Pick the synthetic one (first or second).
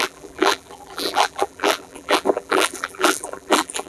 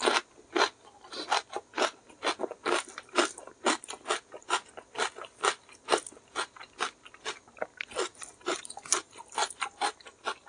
first